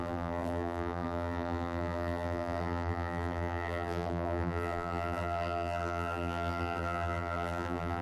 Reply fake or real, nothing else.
fake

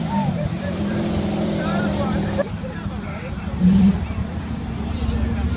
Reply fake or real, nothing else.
fake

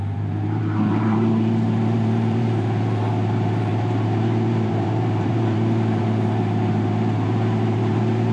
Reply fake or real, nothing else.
fake